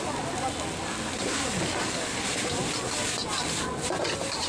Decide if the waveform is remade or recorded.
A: recorded